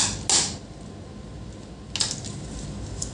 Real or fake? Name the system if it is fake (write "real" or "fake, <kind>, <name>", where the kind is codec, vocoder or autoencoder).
real